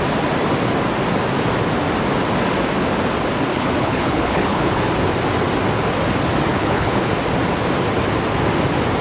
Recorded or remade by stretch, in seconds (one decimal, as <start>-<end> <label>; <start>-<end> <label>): 0.0-3.5 recorded; 3.5-4.8 remade; 4.8-6.5 recorded; 6.5-7.1 remade; 7.1-9.0 recorded